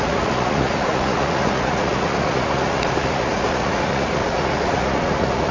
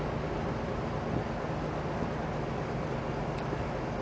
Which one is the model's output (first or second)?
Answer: first